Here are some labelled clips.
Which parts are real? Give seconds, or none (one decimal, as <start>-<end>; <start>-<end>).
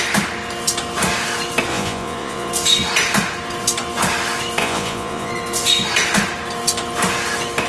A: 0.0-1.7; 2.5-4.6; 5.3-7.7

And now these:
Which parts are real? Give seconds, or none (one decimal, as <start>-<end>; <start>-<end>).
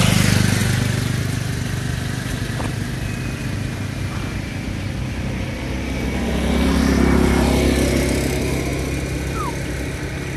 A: 0.0-10.4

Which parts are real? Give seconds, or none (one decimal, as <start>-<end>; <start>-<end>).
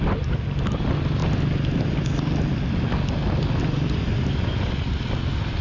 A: 0.0-5.6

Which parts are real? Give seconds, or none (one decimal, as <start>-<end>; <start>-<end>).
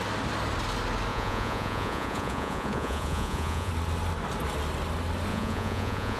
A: 0.0-1.1; 3.7-5.3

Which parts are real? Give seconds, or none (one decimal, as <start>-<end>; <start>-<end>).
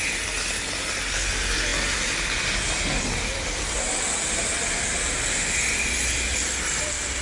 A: 0.0-7.2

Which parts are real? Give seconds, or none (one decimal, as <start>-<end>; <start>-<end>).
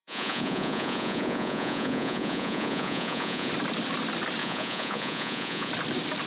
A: 3.5-4.4; 5.7-6.3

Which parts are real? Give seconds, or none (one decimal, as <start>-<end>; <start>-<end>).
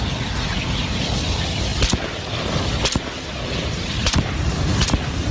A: 0.0-5.3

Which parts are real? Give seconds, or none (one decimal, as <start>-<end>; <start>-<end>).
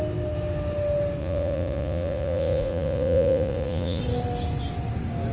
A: 0.0-1.2; 4.0-5.3